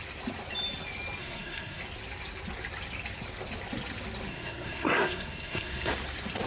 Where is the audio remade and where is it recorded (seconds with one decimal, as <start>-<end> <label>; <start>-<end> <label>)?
0.0-1.2 recorded; 1.2-1.8 remade; 1.8-4.3 recorded; 4.3-5.9 remade; 5.9-6.5 recorded